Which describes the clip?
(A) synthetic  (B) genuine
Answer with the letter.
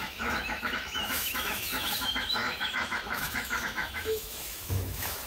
A